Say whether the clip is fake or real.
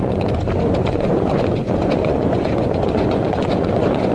fake